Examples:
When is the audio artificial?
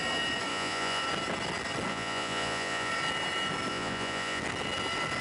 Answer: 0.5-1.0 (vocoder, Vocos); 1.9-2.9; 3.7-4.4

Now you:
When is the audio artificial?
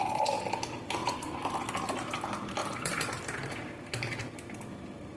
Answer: 2.6-3.9 (vocoder, BigVGAN v2)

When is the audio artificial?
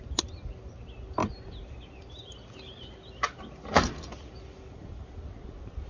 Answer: none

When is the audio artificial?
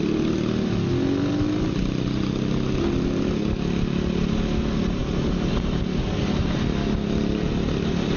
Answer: none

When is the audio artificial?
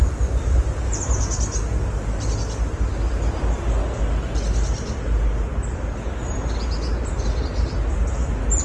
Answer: 0.0-1.2 (vocoder, BigVGAN v2)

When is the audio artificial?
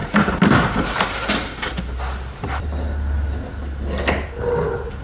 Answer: none